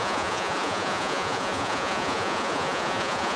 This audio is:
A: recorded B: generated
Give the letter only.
B